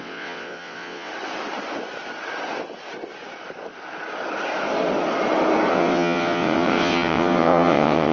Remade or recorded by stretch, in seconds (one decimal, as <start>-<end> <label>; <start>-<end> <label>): 0.0-1.1 remade; 1.1-5.7 recorded; 5.7-8.1 remade